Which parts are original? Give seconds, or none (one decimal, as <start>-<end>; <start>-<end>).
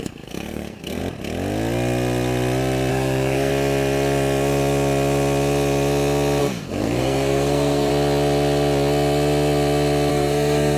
1.0-2.9; 3.5-6.4; 7.9-10.1